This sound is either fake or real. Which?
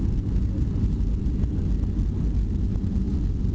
real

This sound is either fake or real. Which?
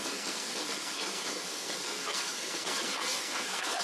fake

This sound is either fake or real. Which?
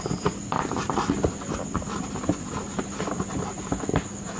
real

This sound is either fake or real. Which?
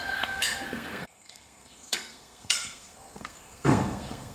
fake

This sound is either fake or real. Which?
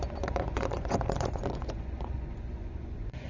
fake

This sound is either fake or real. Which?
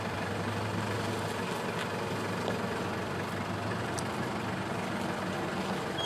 real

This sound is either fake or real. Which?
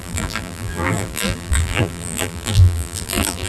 fake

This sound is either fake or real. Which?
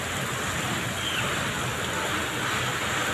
real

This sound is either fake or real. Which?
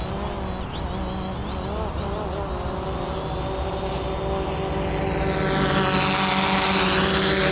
real